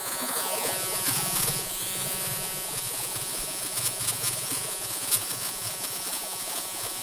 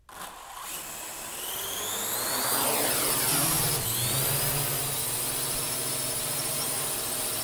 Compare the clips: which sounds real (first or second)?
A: second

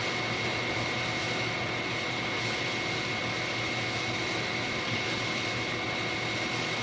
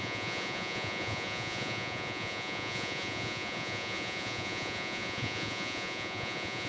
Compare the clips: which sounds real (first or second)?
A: first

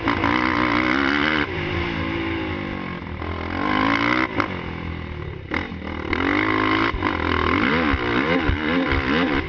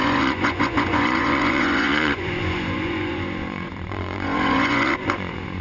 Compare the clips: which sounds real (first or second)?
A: first